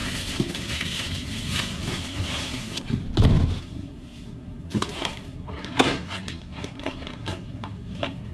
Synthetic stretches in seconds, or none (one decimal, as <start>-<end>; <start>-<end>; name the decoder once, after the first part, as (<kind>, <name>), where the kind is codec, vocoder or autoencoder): 0.0-3.0 (codec, SNAC); 3.6-8.3